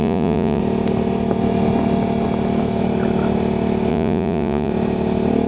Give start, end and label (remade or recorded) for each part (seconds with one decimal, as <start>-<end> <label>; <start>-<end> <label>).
0.0-0.6 remade; 0.6-3.9 recorded; 3.9-4.7 remade; 4.7-5.5 recorded